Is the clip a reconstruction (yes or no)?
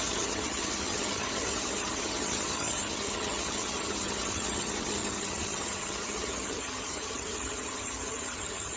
yes